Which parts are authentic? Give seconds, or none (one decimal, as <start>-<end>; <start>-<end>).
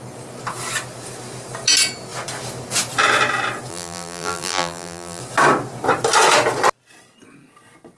0.0-3.7; 5.2-8.0